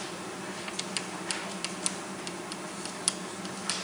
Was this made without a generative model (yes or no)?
yes